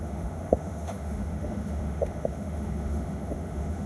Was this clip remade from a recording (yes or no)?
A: yes